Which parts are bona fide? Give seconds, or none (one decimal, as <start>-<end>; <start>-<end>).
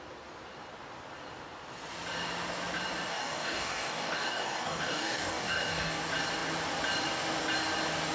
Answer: 0.0-3.1; 6.0-8.1